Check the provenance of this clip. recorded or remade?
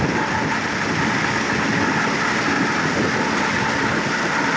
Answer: recorded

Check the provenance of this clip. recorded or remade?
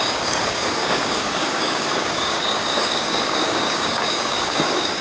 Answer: remade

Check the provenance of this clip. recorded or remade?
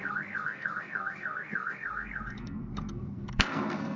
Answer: remade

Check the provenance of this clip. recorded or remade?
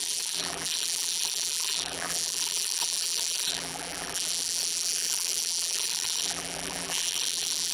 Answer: remade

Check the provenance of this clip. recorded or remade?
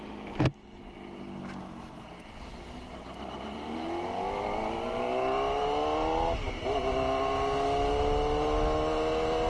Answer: recorded